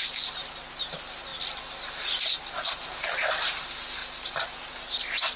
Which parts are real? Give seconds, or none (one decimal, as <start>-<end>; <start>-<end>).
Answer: 0.0-5.4